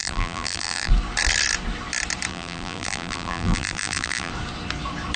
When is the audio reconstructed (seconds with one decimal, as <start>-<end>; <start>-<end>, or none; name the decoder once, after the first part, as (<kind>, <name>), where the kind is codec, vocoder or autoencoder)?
0.0-0.9 (vocoder, BigVGAN v2); 2.3-4.3